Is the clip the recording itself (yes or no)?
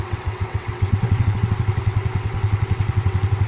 no